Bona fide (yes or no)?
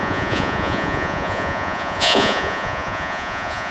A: no